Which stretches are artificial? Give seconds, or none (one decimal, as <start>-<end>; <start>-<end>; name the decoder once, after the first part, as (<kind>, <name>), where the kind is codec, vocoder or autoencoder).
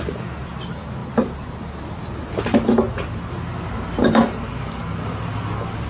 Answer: 0.0-1.0 (vocoder, BigVGAN v2); 4.5-5.9